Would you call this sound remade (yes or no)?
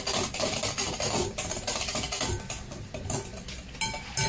no